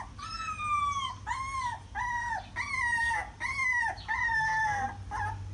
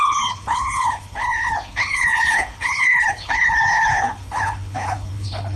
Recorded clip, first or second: first